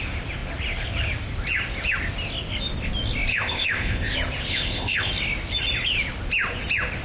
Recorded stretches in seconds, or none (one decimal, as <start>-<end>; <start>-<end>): 0.0-3.3; 4.1-4.5; 5.1-7.0

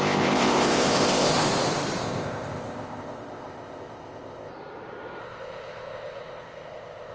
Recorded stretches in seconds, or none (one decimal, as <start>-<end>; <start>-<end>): 1.3-2.0; 4.5-5.2